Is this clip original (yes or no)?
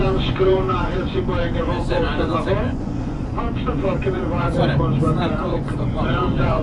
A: no